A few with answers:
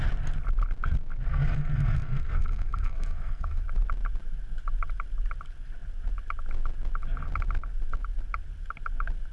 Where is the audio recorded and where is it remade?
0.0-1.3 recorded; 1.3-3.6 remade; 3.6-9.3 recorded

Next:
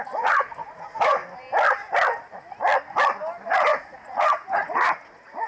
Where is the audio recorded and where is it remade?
0.0-1.2 remade; 1.2-3.7 recorded; 3.7-5.5 remade

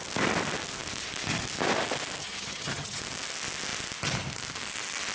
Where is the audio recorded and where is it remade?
0.0-2.2 recorded; 2.2-3.0 remade; 3.0-5.1 recorded

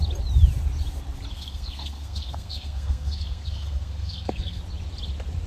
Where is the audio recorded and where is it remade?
0.0-1.3 recorded; 1.3-4.6 remade; 4.6-5.5 recorded

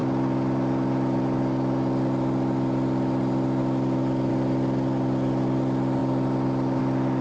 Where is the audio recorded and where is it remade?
0.0-7.2 recorded

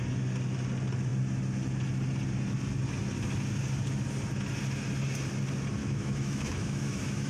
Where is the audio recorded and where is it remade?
0.0-5.8 recorded; 5.8-7.3 remade

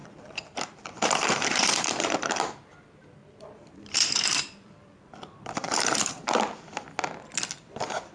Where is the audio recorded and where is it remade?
0.0-2.6 remade; 2.6-3.2 recorded; 3.2-6.9 remade; 6.9-8.1 recorded

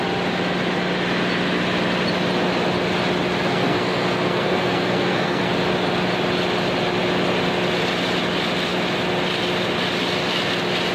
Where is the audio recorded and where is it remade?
0.0-3.4 recorded; 3.4-5.5 remade; 5.5-10.9 recorded